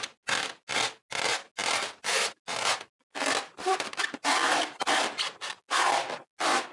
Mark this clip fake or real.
real